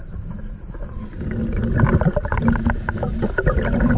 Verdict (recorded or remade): recorded